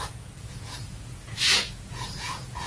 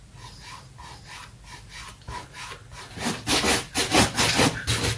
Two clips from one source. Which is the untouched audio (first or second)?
second